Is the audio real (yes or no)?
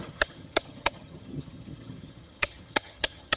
no